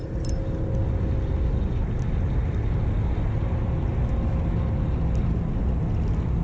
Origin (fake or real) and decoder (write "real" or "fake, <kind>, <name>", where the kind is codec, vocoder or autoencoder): real